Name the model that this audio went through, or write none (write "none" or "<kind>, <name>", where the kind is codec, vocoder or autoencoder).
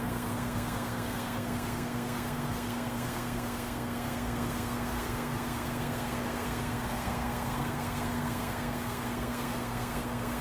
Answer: codec, SNAC